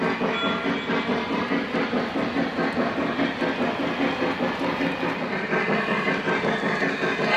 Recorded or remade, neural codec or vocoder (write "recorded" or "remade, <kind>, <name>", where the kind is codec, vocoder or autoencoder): recorded